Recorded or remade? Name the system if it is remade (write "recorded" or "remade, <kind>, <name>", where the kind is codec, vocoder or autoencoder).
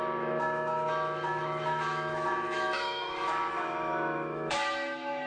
remade, autoencoder, DAC-VAE